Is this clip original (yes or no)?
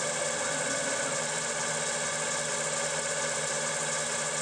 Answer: yes